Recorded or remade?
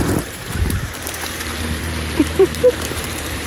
remade